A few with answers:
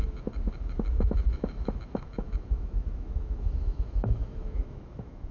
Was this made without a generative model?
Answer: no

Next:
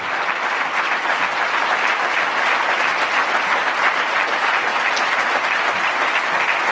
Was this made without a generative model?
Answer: yes